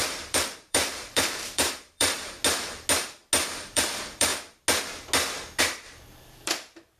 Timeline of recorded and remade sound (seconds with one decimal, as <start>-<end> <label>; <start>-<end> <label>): 0.0-2.4 remade; 2.4-3.4 recorded; 3.4-4.3 remade; 4.3-5.6 recorded; 5.6-7.0 remade